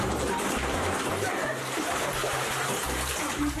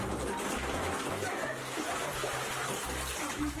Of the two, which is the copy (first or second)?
first